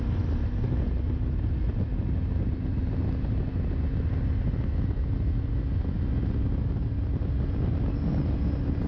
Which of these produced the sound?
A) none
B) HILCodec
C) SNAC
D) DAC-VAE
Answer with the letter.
A